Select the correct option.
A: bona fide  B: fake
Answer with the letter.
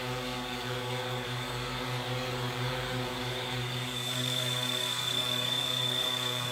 B